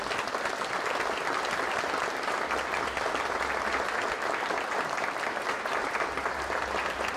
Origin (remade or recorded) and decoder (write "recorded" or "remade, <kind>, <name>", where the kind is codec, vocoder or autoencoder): recorded